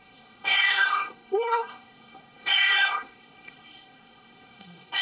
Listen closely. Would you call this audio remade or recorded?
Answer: remade